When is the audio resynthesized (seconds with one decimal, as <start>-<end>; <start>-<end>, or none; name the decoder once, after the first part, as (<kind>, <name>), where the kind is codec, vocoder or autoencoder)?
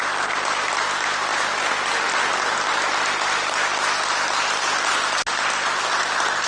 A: none